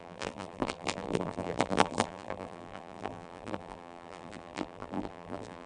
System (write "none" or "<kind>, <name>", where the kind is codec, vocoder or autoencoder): vocoder, BigVGAN v2